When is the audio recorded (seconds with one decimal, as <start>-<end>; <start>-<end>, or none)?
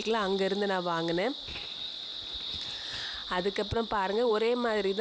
0.0-5.0